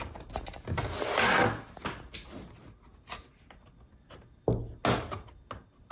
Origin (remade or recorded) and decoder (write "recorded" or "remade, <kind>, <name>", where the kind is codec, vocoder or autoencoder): recorded